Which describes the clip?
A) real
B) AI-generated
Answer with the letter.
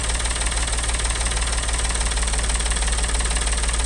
A